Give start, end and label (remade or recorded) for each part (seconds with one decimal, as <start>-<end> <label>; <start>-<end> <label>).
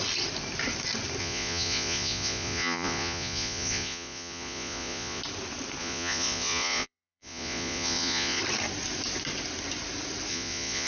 0.0-1.2 recorded; 1.2-5.2 remade; 5.2-5.8 recorded; 5.8-8.4 remade; 8.4-10.3 recorded; 10.3-10.9 remade